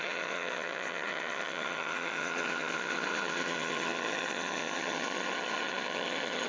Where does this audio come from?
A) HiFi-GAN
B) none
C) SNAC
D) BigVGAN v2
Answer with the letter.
A